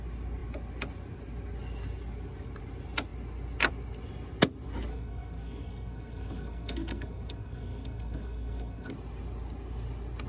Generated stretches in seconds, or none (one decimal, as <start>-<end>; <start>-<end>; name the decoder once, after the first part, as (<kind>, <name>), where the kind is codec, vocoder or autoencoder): 4.9-8.9 (codec, SNAC)